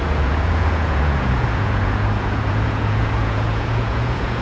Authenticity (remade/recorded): remade